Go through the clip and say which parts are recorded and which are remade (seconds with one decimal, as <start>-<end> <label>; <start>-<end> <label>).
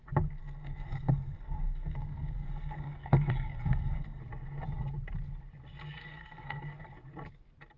0.0-0.4 recorded; 0.4-4.2 remade; 4.2-6.1 recorded; 6.1-6.6 remade; 6.6-7.8 recorded